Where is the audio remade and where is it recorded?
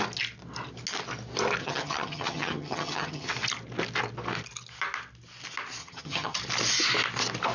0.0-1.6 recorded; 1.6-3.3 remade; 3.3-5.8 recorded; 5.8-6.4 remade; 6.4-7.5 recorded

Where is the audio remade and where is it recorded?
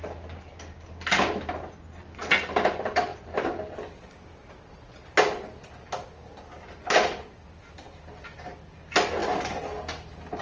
0.0-10.4 recorded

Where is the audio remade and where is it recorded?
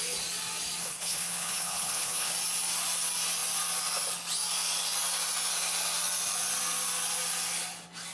0.0-0.8 recorded; 0.8-2.3 remade; 2.3-8.1 recorded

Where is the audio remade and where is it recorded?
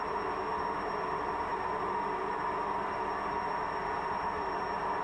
0.0-5.0 remade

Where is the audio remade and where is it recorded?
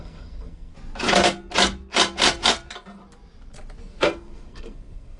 0.0-0.7 remade; 0.7-3.8 recorded; 3.8-5.2 remade